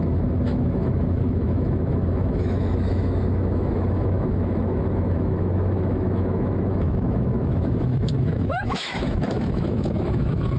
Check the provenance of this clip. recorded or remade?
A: remade